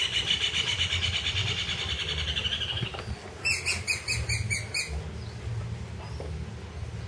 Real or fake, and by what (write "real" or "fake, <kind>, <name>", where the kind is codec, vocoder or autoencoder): real